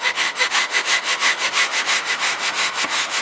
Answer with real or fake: fake